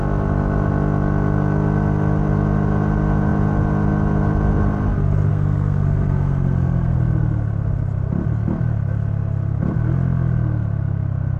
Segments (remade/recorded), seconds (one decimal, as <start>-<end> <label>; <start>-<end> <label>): 0.0-5.3 recorded; 5.3-7.0 remade; 7.0-11.4 recorded